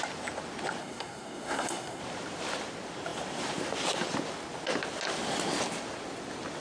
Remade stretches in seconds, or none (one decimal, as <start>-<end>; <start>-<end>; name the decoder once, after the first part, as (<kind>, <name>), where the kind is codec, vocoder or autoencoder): 0.8-2.0 (codec, SNAC)